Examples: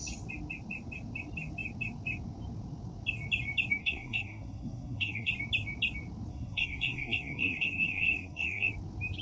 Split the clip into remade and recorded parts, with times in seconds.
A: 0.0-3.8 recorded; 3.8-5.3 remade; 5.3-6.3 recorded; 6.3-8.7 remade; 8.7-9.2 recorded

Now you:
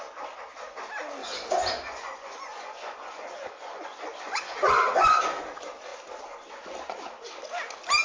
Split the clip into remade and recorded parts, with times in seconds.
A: 0.0-1.2 recorded; 1.2-5.4 remade; 5.4-8.0 recorded

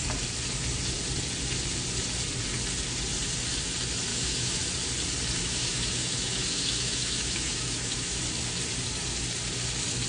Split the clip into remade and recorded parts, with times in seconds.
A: 0.0-4.1 recorded; 4.1-4.6 remade; 4.6-5.4 recorded; 5.4-8.2 remade; 8.2-10.1 recorded